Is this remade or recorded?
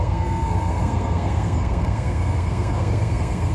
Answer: remade